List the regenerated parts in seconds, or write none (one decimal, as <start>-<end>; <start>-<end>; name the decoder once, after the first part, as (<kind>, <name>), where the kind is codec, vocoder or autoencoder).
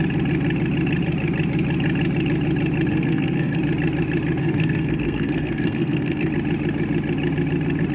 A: 2.9-3.6 (codec, SNAC); 4.4-6.3